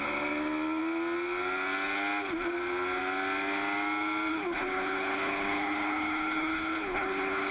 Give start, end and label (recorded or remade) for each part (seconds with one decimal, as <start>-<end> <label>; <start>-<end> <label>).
0.0-4.3 recorded; 4.3-7.5 remade